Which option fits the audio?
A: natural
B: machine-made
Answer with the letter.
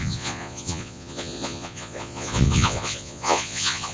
B